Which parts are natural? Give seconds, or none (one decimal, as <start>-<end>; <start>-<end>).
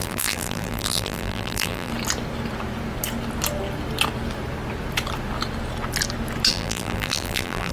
1.9-6.5